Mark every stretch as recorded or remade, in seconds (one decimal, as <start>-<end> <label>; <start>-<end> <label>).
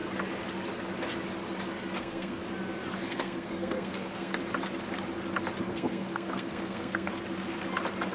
0.0-2.0 recorded; 2.0-2.4 remade; 2.4-3.1 recorded; 3.1-4.4 remade; 4.4-5.7 recorded; 5.7-7.1 remade; 7.1-8.1 recorded